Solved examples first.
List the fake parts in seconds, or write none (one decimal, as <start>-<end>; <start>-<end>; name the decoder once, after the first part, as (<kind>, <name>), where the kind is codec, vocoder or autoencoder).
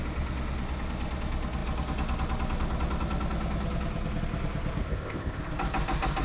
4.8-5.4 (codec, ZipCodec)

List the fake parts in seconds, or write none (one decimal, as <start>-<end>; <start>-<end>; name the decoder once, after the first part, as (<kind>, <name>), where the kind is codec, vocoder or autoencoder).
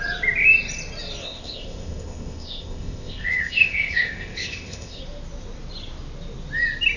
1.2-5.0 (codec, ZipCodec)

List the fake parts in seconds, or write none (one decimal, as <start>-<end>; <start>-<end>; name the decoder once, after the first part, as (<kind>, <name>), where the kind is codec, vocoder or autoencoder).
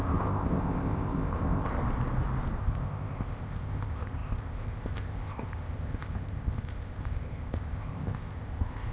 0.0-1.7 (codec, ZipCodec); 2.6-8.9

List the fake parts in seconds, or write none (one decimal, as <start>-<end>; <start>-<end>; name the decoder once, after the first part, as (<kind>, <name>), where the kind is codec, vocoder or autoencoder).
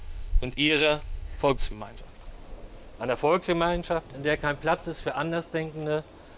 0.0-2.0 (codec, ZipCodec)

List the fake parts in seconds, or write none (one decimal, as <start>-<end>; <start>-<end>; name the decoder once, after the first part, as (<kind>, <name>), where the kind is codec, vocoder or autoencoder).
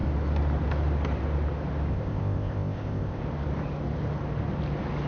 1.9-3.2 (codec, ZipCodec)